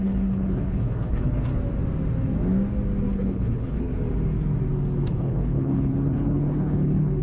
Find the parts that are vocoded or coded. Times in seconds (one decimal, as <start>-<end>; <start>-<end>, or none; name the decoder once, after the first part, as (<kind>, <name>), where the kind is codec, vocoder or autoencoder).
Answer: 0.0-1.5 (codec, HILCodec); 3.1-3.9; 5.0-7.2